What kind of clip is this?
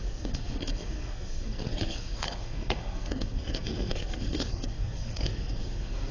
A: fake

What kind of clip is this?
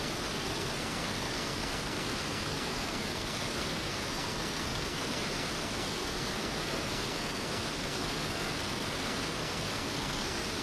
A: fake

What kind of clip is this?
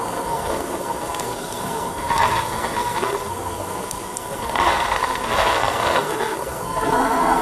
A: fake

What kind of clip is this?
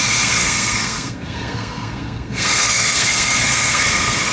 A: fake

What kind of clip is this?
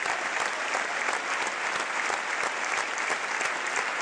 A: real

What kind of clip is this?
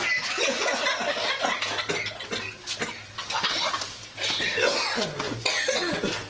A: real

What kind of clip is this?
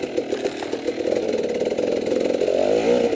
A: real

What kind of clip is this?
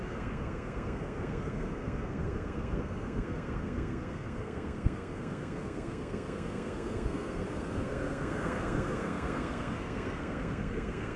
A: fake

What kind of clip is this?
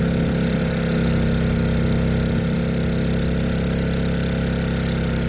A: real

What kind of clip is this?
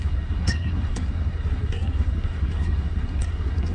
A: fake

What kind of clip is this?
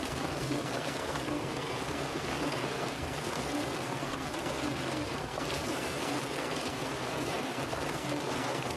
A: fake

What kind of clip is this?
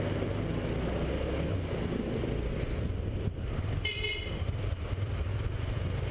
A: real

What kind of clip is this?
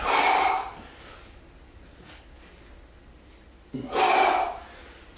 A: real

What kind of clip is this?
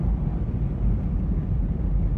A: real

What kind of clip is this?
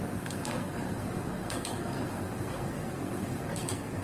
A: fake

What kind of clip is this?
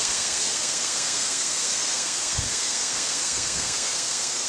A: fake